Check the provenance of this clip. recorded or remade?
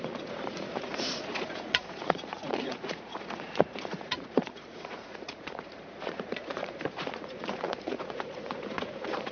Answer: remade